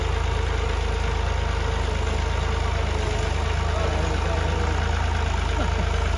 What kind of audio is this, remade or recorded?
recorded